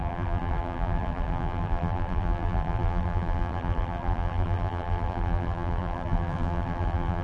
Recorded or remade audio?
remade